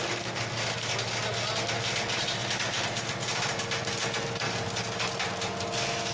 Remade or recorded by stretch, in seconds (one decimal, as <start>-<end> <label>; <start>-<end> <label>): 0.0-6.1 recorded